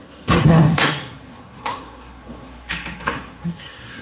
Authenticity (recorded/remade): remade